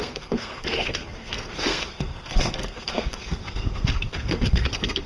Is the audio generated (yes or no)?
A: yes